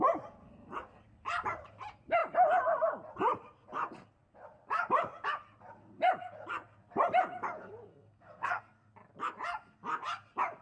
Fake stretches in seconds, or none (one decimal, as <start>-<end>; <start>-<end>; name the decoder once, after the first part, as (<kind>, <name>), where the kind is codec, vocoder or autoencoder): 7.9-8.6 (codec, SNAC)